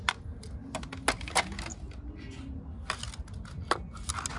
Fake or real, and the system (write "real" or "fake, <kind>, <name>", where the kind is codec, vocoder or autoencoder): real